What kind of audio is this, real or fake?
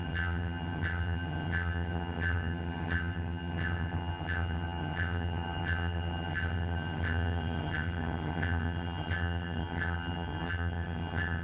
fake